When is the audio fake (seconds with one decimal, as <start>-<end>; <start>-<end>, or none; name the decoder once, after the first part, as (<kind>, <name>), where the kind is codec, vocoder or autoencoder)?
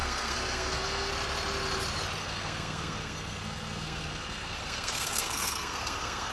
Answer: 0.0-1.1 (codec, SNAC); 2.2-6.3